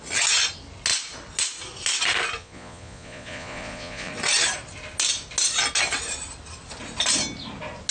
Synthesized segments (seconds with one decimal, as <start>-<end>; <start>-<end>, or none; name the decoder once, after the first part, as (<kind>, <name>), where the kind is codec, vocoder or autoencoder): 2.4-4.1 (vocoder, Vocos)